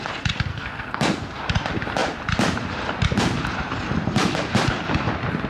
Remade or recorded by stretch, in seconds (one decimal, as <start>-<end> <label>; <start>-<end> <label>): 0.0-0.5 recorded; 0.5-1.4 remade; 1.4-5.5 recorded